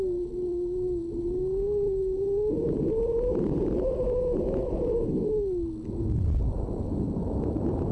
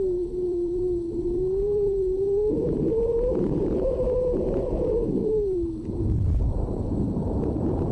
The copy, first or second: second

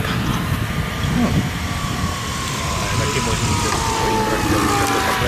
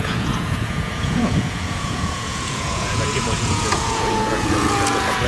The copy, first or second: second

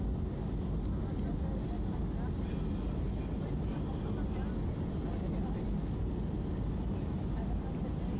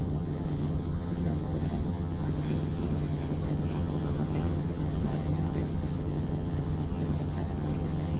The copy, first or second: second